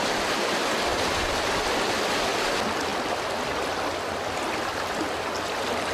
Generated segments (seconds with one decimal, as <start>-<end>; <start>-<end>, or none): 0.9-1.6; 2.9-3.8